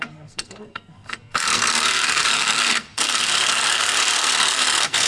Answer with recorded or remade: remade